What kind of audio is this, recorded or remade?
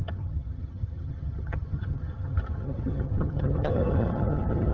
remade